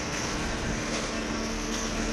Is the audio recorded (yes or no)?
no